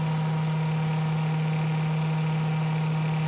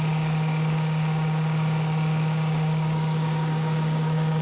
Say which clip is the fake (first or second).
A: second